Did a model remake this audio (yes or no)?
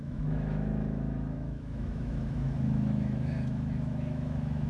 yes